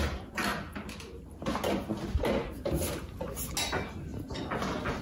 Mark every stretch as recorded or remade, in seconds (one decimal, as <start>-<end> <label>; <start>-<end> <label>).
0.0-5.0 recorded

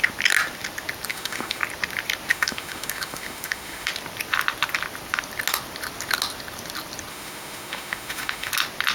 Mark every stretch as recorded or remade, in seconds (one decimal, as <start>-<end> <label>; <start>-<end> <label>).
0.0-1.1 recorded; 1.1-1.6 remade; 1.6-2.3 recorded; 2.3-3.9 remade; 3.9-7.1 recorded; 7.1-8.5 remade; 8.5-8.9 recorded

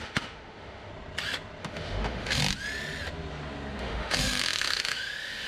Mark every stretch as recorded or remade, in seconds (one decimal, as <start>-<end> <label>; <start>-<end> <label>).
0.0-0.9 remade; 0.9-1.6 recorded; 1.6-2.4 remade; 2.4-3.8 recorded; 3.8-5.5 remade

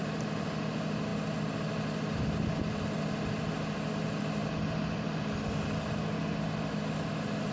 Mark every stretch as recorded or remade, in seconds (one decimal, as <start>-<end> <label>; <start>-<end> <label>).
0.0-7.5 recorded

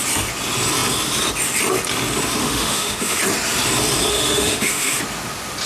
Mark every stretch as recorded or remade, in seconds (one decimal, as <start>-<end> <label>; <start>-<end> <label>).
0.0-2.4 recorded; 2.4-3.2 remade; 3.2-4.1 recorded; 4.1-5.0 remade; 5.0-5.7 recorded

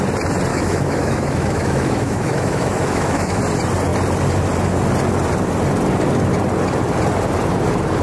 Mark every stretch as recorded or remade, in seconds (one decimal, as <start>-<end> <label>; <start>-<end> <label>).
0.0-0.5 recorded; 0.5-3.4 remade; 3.4-8.0 recorded